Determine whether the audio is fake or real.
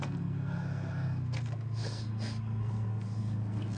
fake